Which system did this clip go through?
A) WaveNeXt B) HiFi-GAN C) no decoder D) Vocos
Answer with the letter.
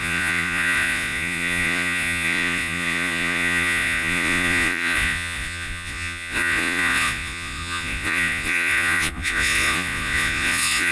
D